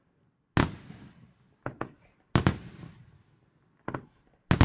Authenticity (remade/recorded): recorded